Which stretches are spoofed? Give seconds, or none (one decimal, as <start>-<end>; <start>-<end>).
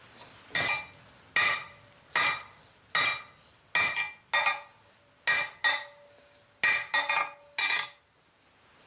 none